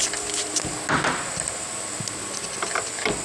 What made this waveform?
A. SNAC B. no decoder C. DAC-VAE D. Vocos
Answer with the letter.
B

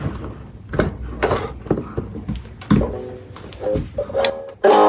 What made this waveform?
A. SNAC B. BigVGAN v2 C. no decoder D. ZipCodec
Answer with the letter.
C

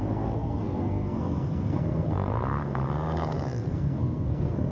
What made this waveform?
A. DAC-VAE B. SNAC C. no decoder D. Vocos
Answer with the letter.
B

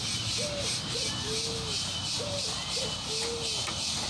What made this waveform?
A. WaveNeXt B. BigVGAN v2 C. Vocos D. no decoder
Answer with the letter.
D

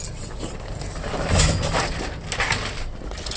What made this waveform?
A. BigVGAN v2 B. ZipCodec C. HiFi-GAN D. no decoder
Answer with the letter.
D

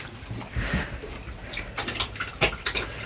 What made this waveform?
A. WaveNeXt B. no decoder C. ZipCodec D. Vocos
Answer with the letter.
B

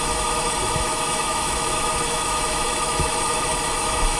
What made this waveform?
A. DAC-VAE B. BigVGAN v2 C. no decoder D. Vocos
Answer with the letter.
A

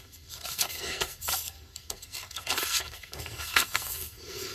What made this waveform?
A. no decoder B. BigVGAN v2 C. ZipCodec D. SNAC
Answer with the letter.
D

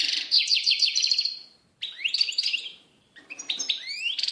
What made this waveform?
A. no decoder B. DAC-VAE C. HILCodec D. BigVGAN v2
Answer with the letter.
D